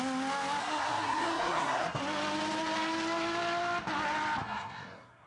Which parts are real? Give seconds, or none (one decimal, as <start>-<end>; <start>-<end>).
0.0-0.6; 2.0-4.4